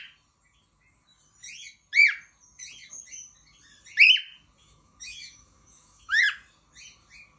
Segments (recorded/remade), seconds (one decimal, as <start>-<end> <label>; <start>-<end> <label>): 0.0-4.6 recorded; 4.6-6.2 remade; 6.2-7.4 recorded